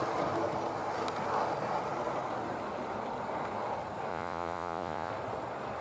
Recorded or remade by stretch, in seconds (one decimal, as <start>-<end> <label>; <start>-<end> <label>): 0.0-4.1 recorded; 4.1-5.1 remade; 5.1-5.8 recorded